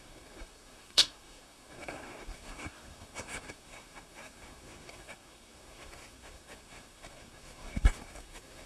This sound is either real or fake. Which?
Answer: fake